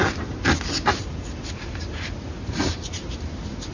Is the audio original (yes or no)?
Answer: yes